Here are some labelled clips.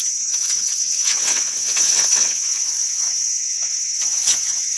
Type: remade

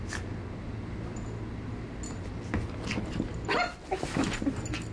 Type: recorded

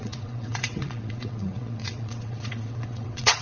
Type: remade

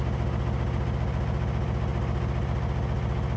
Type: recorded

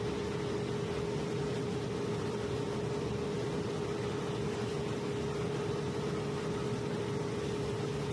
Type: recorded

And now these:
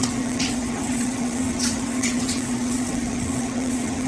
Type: remade